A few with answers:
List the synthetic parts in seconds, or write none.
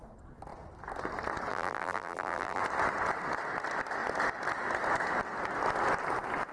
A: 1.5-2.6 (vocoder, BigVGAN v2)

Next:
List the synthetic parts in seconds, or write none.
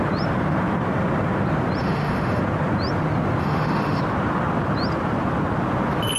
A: 1.8-2.4 (autoencoder, DAC-VAE); 3.4-4.0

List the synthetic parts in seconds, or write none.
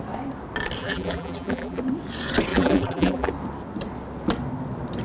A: 0.8-1.8 (vocoder, BigVGAN v2); 2.5-3.3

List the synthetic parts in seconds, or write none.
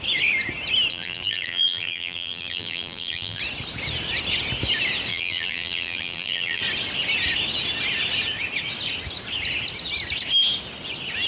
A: 0.9-3.4 (vocoder, BigVGAN v2); 5.1-6.6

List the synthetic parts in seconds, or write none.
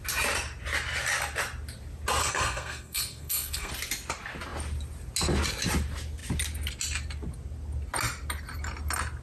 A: 2.2-3.7 (codec, SNAC)